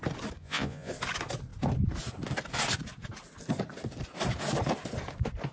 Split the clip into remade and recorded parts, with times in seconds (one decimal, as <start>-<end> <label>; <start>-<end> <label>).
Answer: 0.0-0.4 recorded; 0.4-0.9 remade; 0.9-5.5 recorded